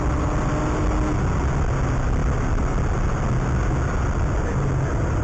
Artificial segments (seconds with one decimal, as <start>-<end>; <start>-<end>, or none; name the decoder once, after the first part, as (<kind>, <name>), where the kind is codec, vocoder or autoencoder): none